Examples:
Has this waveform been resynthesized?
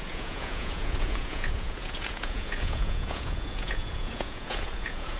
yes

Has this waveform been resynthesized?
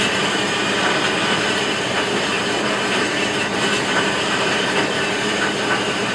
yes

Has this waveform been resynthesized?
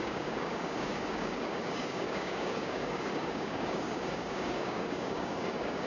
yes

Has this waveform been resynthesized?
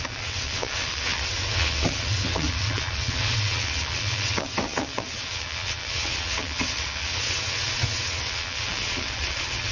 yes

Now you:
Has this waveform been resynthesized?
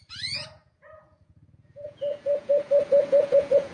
yes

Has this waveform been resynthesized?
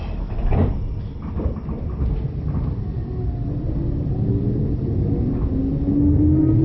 no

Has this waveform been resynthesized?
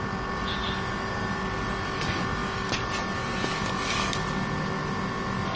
no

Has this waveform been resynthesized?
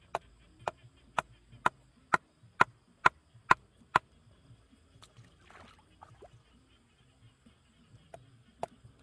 no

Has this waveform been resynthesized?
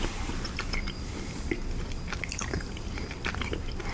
no